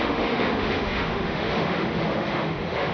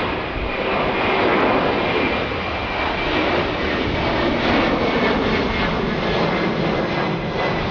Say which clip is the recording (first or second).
second